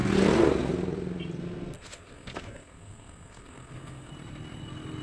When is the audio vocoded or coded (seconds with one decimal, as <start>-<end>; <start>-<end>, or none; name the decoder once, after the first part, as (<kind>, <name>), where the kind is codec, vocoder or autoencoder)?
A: 1.4-4.1 (codec, SNAC)